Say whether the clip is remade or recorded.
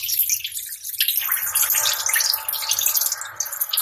recorded